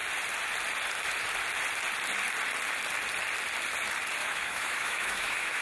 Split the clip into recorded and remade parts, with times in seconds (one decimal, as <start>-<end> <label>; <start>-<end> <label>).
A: 0.0-4.2 recorded; 4.2-5.6 remade